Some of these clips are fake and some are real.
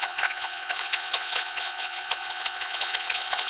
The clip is fake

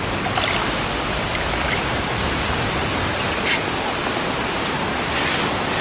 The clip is real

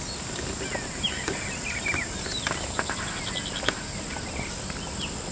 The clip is real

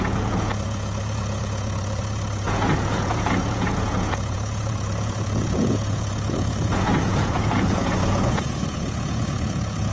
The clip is fake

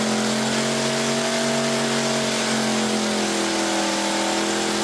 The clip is real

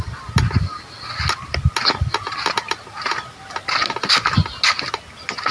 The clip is real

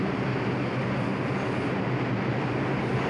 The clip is real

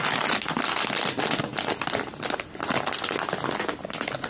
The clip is real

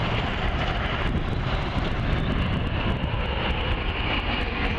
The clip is real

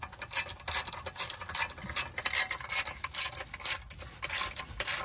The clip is real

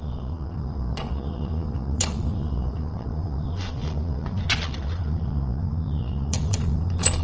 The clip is fake